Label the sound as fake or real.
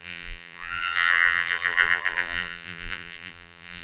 fake